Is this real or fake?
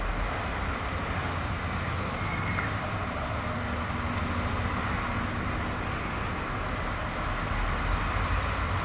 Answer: real